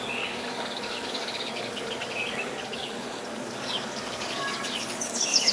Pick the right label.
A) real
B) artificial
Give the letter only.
B